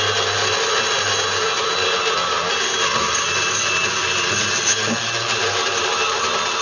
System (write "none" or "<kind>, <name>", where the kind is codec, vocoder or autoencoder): none